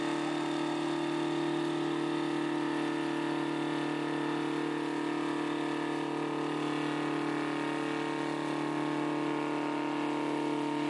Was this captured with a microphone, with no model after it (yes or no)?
yes